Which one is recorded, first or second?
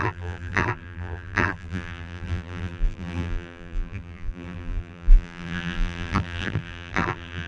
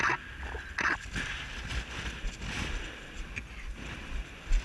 second